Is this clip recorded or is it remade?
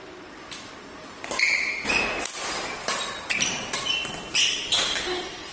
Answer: recorded